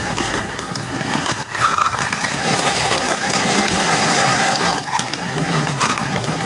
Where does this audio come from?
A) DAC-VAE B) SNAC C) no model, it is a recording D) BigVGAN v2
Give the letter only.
B